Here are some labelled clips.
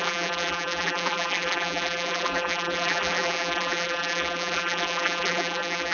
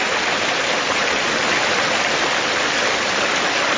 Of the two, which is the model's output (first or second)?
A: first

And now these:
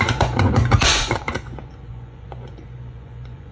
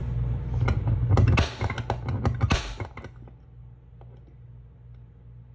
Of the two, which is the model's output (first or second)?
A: first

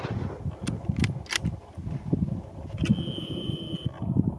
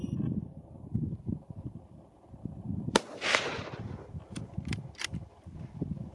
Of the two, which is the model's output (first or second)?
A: second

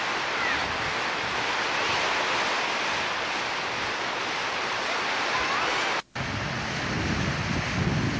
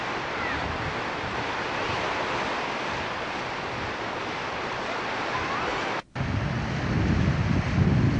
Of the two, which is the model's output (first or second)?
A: second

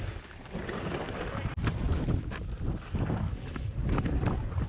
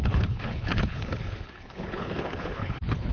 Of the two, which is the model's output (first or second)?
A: second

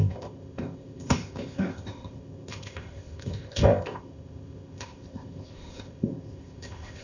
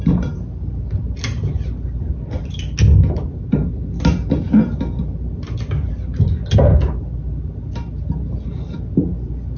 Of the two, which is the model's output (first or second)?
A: first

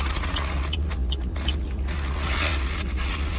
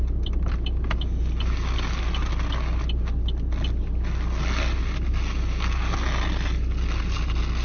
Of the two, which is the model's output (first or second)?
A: first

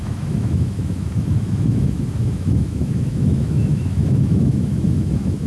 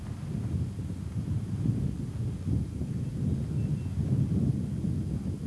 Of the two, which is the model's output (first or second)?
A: first